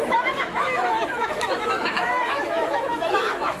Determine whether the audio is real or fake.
fake